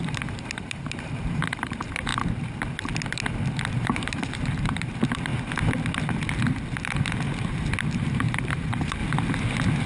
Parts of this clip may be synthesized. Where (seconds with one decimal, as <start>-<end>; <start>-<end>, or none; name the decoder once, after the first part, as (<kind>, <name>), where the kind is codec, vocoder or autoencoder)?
0.0-2.1 (vocoder, BigVGAN v2); 3.7-5.3; 7.8-9.0